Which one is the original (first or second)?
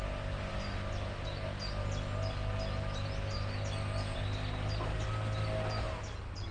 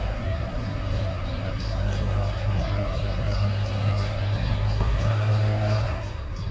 first